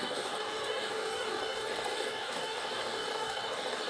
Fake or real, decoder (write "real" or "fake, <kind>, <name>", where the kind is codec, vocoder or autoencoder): fake, codec, DAC